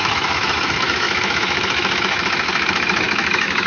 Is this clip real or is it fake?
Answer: fake